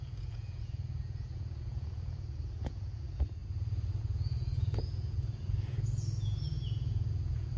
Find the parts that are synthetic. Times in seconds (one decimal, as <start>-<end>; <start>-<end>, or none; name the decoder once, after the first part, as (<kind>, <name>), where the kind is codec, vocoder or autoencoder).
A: 0.0-3.4 (vocoder, Vocos); 4.0-7.6